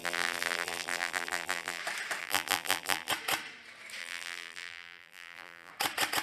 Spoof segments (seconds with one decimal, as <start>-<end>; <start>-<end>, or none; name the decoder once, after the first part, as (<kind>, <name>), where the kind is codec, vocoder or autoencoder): 0.0-1.8 (vocoder, BigVGAN v2); 2.2-3.1; 4.0-5.7